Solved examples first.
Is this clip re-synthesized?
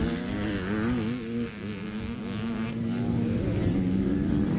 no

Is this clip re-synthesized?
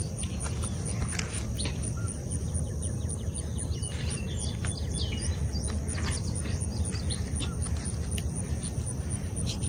no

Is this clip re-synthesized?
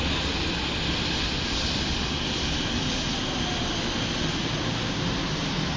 no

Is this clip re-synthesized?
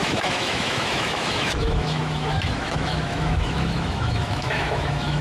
yes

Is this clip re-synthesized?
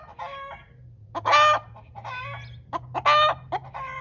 no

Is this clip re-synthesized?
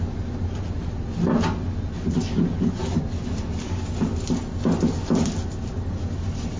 no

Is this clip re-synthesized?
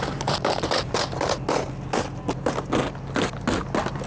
no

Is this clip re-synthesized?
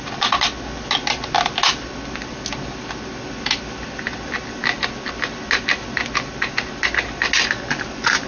no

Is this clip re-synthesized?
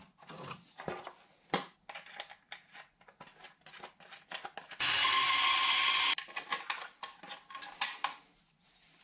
no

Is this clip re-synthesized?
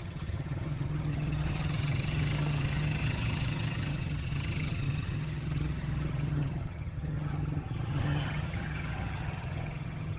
yes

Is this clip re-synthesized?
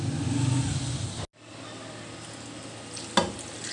no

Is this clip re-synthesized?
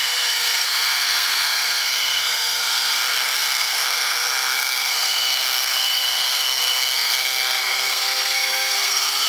yes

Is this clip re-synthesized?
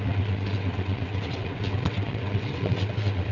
yes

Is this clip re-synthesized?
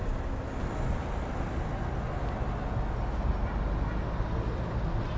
no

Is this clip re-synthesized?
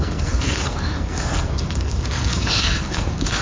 yes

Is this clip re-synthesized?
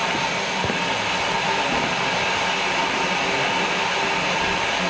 no